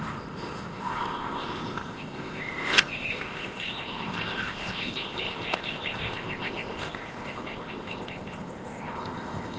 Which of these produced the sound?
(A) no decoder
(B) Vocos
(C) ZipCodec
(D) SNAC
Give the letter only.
C